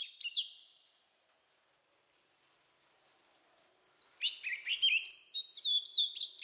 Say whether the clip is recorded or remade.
recorded